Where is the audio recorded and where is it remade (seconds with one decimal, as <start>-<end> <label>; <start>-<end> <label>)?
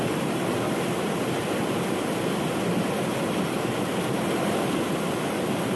0.0-1.4 remade; 1.4-5.8 recorded